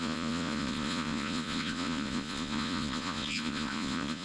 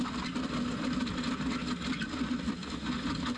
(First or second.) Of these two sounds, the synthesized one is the first